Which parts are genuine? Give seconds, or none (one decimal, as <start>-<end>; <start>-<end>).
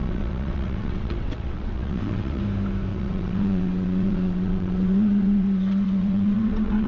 2.4-2.9